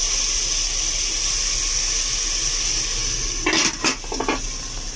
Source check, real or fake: real